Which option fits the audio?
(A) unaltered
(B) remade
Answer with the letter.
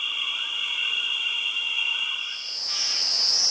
A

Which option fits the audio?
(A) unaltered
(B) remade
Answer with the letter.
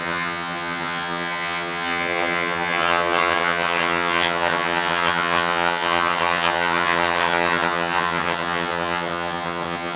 B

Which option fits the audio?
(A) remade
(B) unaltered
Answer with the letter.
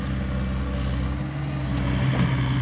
B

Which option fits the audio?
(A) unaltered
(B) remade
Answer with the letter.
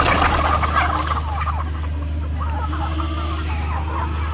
A